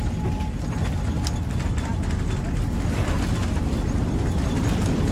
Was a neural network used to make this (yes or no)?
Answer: no